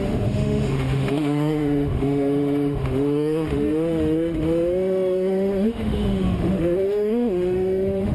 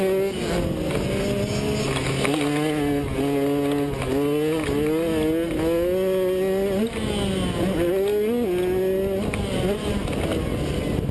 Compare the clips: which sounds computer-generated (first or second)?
first